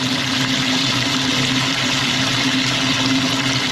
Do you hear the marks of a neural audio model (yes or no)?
no